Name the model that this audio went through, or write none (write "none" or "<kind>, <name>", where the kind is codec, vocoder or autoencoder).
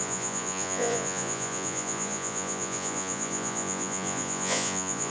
vocoder, Vocos